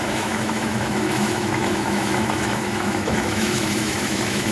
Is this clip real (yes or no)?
no